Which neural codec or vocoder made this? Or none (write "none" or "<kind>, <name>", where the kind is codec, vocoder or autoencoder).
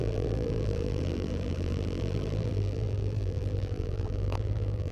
vocoder, BigVGAN v2